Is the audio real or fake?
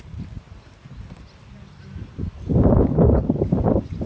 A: real